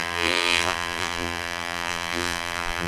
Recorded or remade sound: remade